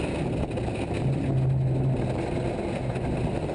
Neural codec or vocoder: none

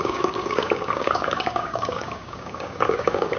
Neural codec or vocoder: codec, DAC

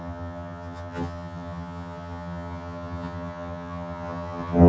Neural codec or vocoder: vocoder, HiFi-GAN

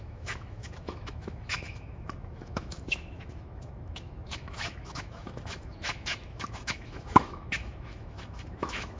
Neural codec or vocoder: autoencoder, DAC-VAE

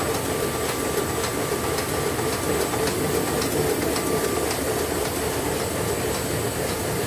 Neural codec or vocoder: none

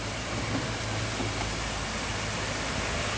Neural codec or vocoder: vocoder, BigVGAN v2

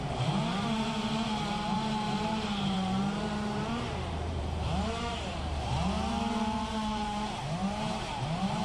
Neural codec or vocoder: vocoder, BigVGAN v2